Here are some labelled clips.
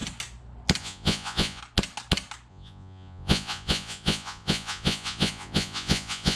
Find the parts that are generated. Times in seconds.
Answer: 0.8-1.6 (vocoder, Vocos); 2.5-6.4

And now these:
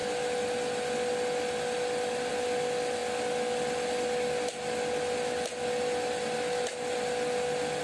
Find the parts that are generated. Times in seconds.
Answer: none

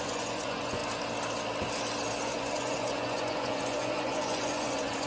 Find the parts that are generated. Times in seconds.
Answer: 0.0-0.8 (vocoder, Vocos); 2.3-5.1